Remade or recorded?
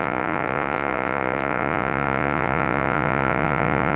remade